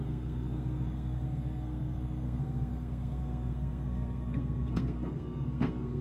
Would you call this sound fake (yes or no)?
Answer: yes